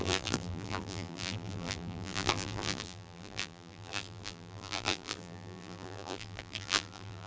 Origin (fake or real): fake